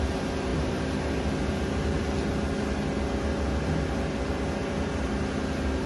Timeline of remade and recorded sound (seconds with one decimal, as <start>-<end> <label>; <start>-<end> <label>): 0.0-0.5 recorded; 0.5-2.1 remade; 2.1-4.6 recorded; 4.6-5.3 remade; 5.3-5.9 recorded

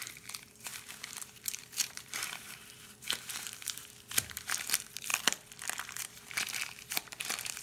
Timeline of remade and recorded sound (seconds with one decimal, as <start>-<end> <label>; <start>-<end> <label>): 0.0-5.1 remade; 5.1-5.8 recorded; 5.8-7.6 remade

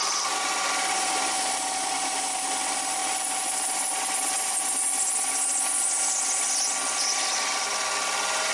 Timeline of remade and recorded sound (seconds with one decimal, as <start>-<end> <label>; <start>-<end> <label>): 0.0-8.5 recorded